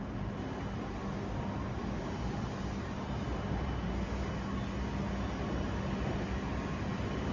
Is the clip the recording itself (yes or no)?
yes